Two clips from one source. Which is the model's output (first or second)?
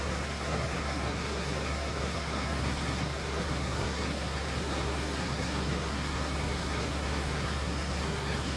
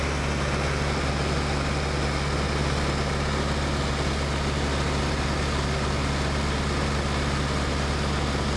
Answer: first